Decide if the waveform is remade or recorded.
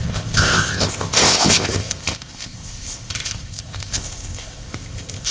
remade